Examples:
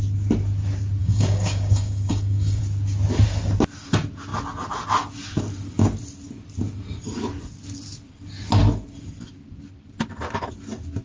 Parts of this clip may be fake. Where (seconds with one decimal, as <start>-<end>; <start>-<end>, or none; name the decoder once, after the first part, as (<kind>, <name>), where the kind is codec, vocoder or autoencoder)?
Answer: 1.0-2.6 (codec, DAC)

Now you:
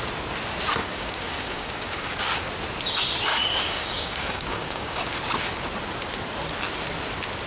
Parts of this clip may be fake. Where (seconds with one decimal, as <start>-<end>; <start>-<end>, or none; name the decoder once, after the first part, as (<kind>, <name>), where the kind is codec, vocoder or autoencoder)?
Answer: 0.8-2.4 (codec, DAC); 3.3-5.1

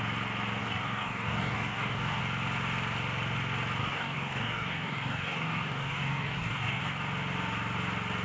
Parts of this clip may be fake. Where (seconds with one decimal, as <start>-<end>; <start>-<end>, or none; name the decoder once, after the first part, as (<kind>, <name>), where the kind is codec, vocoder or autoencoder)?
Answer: 0.6-2.2 (codec, DAC); 3.8-6.8

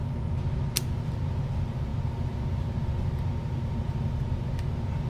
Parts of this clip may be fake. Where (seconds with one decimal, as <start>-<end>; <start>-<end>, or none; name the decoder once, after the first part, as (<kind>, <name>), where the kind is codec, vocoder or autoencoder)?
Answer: none

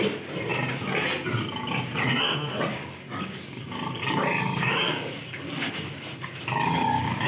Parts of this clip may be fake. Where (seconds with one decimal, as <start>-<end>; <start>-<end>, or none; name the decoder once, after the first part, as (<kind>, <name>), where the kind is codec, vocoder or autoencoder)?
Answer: 2.7-7.3 (codec, DAC)

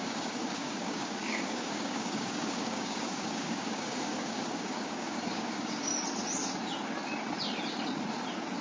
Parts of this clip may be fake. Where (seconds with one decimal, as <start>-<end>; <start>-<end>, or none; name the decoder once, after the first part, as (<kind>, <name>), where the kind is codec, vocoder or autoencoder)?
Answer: 0.0-5.9 (codec, DAC)

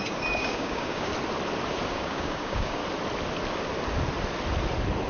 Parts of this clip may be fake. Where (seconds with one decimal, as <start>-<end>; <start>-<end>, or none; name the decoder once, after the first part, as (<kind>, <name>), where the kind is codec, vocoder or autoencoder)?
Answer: 0.0-1.1 (codec, DAC); 1.9-2.8

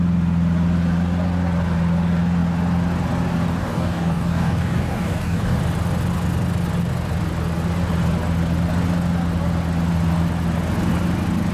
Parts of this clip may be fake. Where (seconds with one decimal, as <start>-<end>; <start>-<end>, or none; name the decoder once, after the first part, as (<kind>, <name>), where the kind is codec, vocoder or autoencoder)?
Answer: 3.6-5.6 (codec, DAC)